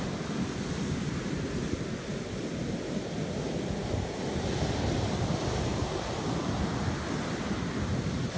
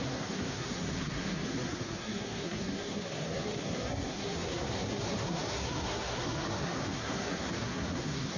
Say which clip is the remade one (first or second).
second